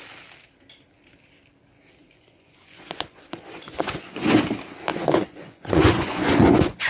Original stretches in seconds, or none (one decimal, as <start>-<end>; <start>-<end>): 0.0-2.0; 4.4-4.9